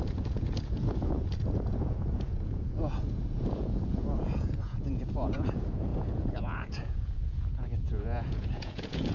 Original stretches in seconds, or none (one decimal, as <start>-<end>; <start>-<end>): none